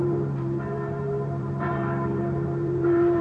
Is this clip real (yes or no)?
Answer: no